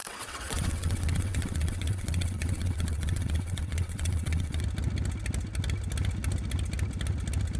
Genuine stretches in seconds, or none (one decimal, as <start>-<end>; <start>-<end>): 4.6-7.6

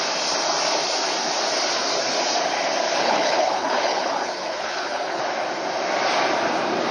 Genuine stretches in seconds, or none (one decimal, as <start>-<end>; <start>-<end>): 0.0-3.0; 5.2-6.9

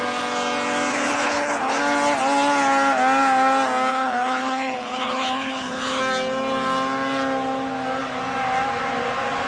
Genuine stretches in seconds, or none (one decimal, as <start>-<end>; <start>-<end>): 0.0-0.9; 1.8-3.9; 6.0-9.5

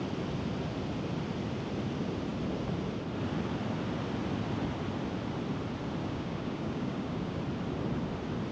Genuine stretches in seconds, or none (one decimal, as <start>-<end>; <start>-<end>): 0.0-6.0; 7.4-8.5

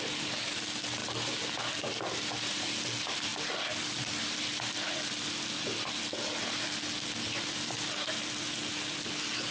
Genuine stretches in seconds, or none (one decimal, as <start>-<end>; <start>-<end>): 0.0-9.5